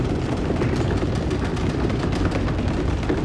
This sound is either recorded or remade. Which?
recorded